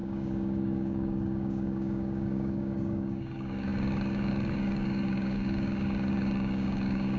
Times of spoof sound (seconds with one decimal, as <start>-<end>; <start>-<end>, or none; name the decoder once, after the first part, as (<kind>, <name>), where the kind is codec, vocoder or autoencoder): 0.0-7.2 (codec, DAC)